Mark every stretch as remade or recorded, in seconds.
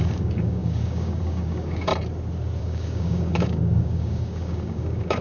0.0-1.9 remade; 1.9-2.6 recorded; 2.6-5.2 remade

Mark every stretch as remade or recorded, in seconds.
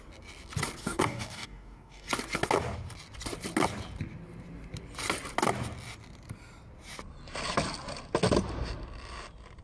0.0-0.8 recorded; 0.8-2.1 remade; 2.1-9.6 recorded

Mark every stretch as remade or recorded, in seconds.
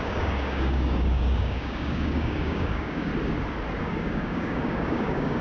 0.0-3.1 remade; 3.1-3.8 recorded; 3.8-5.4 remade